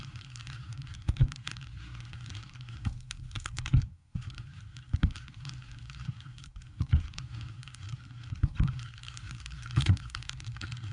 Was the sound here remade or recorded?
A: remade